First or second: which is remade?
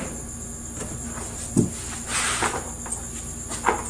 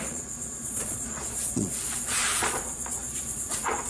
second